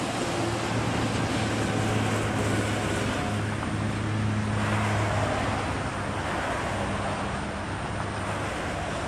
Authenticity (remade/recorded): recorded